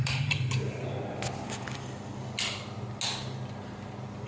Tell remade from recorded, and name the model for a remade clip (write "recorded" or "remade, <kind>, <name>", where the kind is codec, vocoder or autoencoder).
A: recorded